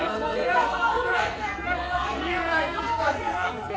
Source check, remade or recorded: remade